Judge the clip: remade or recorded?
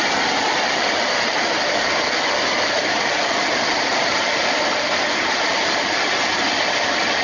recorded